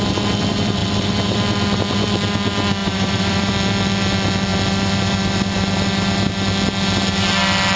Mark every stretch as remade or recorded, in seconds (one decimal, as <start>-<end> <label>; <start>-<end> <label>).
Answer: 0.0-2.8 recorded; 2.8-3.5 remade; 3.5-7.8 recorded